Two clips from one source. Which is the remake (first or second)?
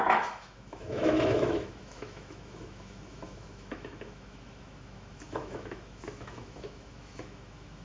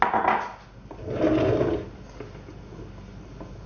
first